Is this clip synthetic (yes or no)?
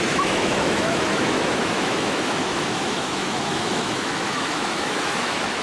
yes